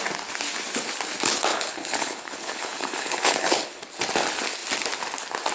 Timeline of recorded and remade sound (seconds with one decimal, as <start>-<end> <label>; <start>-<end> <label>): 0.0-1.5 recorded; 1.5-3.8 remade; 3.8-5.5 recorded